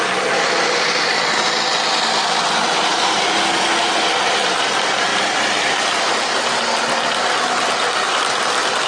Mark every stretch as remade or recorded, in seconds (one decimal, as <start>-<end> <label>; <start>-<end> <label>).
0.0-8.9 recorded